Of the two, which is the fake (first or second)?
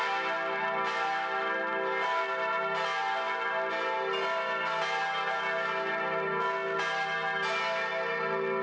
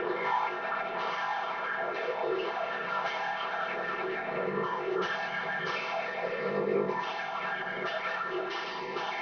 second